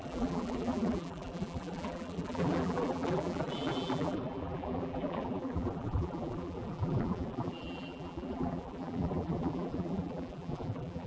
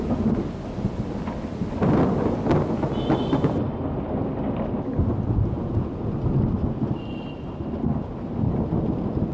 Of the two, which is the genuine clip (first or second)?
second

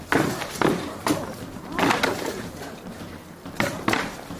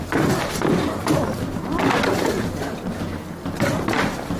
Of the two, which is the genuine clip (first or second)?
second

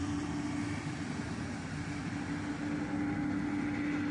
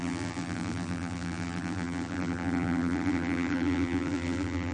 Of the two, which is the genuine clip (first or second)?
first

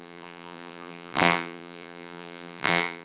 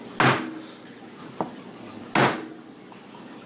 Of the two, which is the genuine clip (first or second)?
second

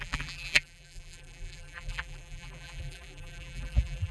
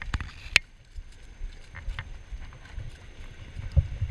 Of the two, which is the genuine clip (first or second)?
second